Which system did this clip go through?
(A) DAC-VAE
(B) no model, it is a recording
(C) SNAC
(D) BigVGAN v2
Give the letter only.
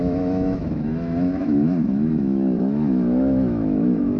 A